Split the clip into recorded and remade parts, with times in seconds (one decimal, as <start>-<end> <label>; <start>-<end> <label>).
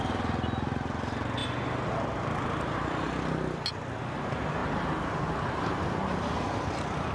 0.0-7.1 recorded